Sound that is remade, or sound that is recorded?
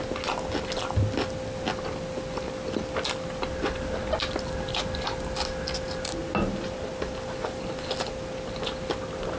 recorded